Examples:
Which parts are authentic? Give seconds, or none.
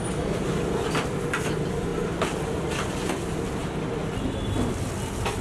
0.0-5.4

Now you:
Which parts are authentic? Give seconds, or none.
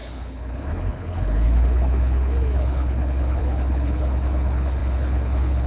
none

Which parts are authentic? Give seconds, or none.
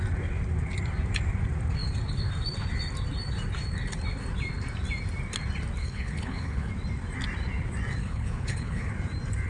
0.0-5.8; 6.7-8.0; 8.9-9.5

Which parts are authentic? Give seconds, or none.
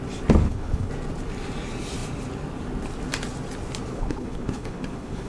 0.0-0.4; 0.9-3.9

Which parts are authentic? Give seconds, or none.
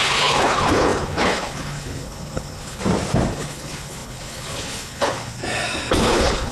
2.8-3.3; 5.4-6.0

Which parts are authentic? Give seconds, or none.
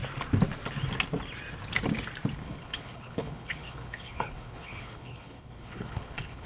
0.0-2.4